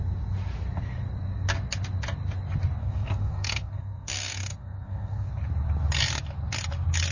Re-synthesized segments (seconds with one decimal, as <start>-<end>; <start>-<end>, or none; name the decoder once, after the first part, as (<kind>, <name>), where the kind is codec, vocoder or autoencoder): 2.8-5.3 (codec, SNAC)